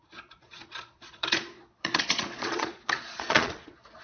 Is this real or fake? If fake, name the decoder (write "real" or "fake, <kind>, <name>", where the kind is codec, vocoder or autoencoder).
fake, vocoder, Vocos